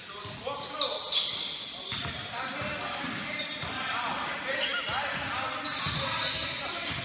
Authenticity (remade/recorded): recorded